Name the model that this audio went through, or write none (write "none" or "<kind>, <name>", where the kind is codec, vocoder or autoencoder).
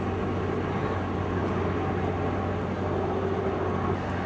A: none